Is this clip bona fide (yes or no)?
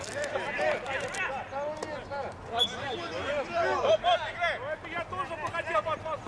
yes